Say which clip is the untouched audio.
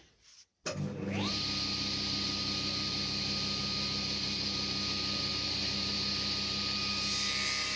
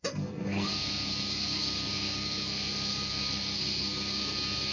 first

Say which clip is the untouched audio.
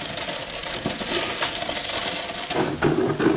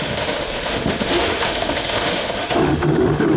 first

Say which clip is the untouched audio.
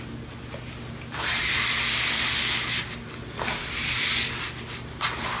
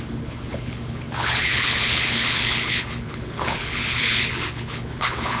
first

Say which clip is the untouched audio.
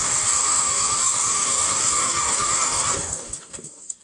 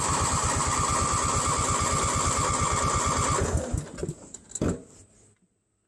second